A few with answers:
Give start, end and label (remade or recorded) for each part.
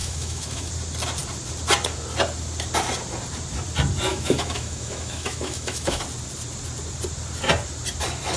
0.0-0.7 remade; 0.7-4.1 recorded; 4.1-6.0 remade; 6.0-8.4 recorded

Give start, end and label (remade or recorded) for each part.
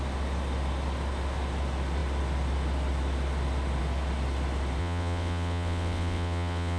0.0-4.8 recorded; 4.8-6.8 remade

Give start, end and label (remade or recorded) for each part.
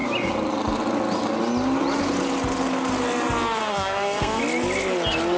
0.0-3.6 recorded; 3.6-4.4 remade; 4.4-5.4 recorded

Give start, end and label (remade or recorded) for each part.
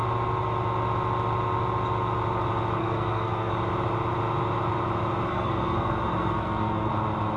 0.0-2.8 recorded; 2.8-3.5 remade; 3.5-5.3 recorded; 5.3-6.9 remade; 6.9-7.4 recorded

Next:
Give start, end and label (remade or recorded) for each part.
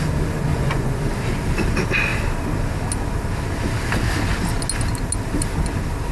0.0-0.5 recorded; 0.5-1.0 remade; 1.0-6.1 recorded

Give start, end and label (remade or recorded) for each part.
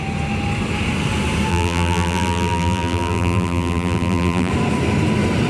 0.0-1.5 recorded; 1.5-4.5 remade; 4.5-5.5 recorded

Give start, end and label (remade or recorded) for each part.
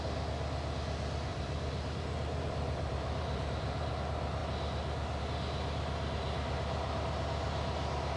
0.0-1.3 recorded; 1.3-3.9 remade; 3.9-8.2 recorded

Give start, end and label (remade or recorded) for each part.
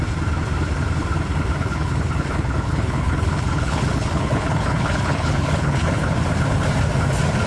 0.0-1.6 recorded; 1.6-6.1 remade; 6.1-7.5 recorded